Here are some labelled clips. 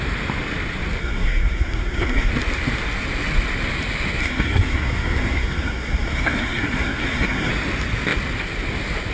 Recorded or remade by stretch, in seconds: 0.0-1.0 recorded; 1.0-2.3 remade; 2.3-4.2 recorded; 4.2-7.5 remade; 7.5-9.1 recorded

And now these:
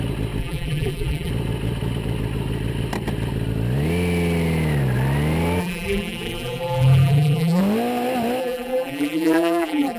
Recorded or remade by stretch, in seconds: 0.0-0.4 recorded; 0.4-1.3 remade; 1.3-5.6 recorded; 5.6-7.6 remade; 7.6-8.4 recorded; 8.4-10.0 remade

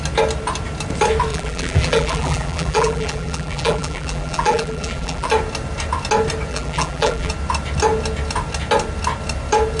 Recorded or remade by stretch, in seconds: 0.0-1.3 recorded; 1.3-5.3 remade; 5.3-6.5 recorded; 6.5-7.3 remade; 7.3-9.8 recorded

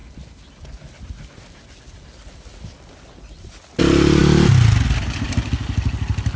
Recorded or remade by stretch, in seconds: 0.0-6.4 recorded

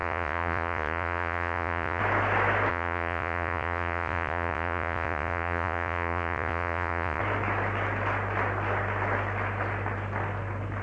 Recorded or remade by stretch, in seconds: 0.0-2.0 remade; 2.0-2.7 recorded; 2.7-7.2 remade; 7.2-10.8 recorded

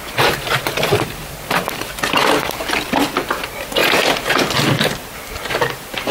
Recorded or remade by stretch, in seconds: 0.0-6.1 recorded

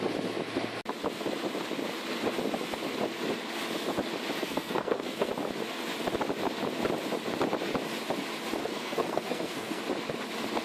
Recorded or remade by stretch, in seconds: 0.0-4.4 recorded; 4.4-5.3 remade; 5.3-8.6 recorded; 8.6-9.8 remade; 9.8-10.6 recorded

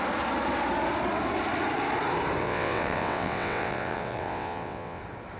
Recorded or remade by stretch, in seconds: 0.0-2.4 recorded; 2.4-5.0 remade; 5.0-5.4 recorded